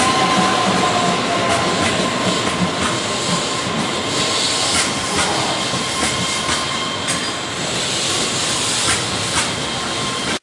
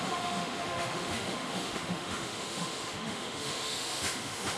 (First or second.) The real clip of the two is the first